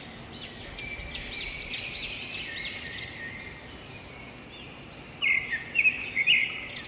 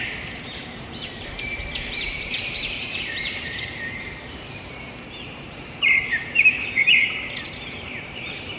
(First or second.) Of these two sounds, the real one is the first